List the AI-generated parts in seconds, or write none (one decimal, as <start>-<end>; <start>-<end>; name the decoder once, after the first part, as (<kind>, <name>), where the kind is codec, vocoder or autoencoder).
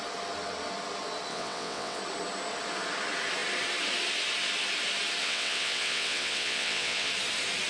1.3-2.0 (vocoder, WaveNeXt); 5.2-7.1